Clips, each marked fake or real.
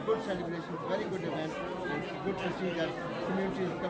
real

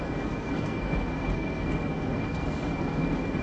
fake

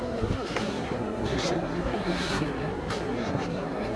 fake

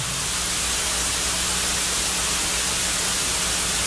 real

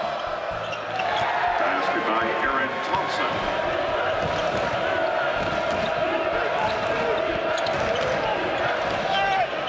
real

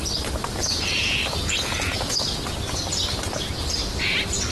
real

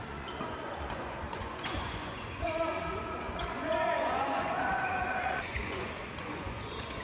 fake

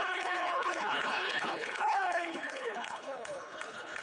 fake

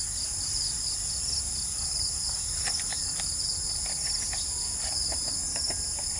real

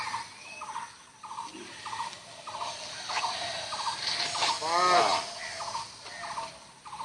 real